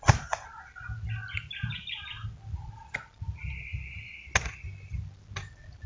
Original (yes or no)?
yes